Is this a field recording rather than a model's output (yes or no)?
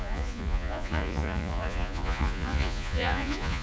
no